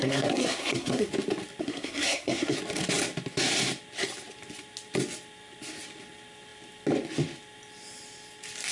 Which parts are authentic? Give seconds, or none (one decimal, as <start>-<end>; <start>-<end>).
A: 1.1-1.6; 2.6-8.7